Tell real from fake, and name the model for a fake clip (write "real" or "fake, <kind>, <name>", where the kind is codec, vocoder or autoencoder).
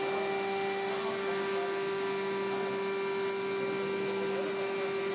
real